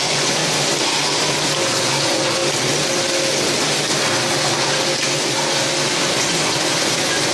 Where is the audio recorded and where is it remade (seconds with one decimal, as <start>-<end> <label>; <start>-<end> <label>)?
0.0-0.4 remade; 0.4-1.6 recorded; 1.6-2.4 remade; 2.4-6.1 recorded; 6.1-7.3 remade

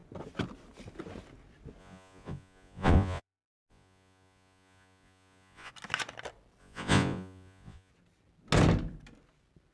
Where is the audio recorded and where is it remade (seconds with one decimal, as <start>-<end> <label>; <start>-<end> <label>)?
0.0-1.8 recorded; 1.8-5.7 remade; 5.7-6.6 recorded; 6.6-7.9 remade; 7.9-9.7 recorded

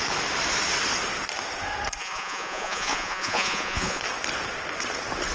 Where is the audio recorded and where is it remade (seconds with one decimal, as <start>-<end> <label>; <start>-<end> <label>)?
0.0-2.0 recorded; 2.0-4.0 remade; 4.0-5.3 recorded

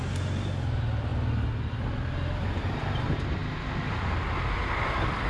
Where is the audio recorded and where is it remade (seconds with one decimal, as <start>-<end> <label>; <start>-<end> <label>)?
0.0-5.3 recorded